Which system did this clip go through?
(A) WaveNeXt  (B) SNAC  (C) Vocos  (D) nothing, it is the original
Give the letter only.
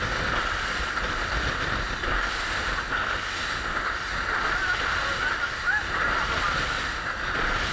D